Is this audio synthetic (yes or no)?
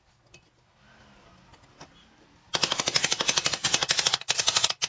no